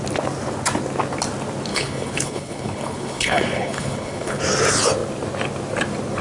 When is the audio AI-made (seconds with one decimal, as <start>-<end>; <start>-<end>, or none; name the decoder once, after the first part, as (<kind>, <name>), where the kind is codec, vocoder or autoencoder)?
1.7-4.4 (codec, HILCodec)

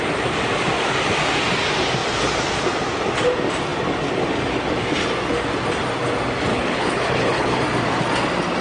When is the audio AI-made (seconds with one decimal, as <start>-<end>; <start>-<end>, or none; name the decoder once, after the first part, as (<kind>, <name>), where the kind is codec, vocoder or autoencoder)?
6.5-7.6 (codec, HILCodec)

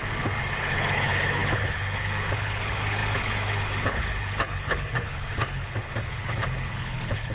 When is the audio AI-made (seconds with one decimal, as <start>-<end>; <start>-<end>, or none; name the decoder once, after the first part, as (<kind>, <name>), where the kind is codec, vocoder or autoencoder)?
0.6-7.3 (codec, HILCodec)

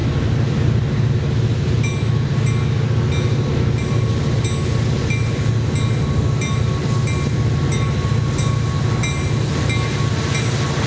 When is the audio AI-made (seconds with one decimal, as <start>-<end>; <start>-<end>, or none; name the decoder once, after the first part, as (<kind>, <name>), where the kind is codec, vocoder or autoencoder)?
none